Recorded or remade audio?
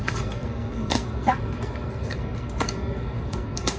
remade